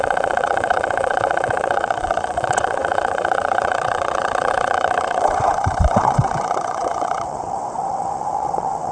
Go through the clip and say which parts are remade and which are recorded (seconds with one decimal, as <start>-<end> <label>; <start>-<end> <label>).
0.0-8.9 remade